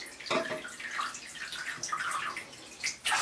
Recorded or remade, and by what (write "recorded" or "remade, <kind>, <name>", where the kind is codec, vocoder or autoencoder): recorded